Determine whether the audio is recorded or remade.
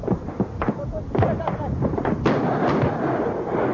recorded